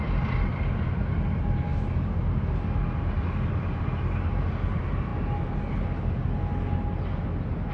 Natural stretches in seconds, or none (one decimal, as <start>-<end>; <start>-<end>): 0.0-7.7